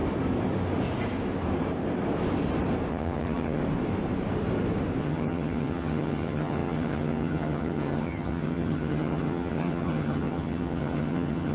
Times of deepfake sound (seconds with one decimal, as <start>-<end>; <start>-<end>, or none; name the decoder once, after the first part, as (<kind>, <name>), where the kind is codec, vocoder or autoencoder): 2.9-3.6 (vocoder, HiFi-GAN); 5.0-11.5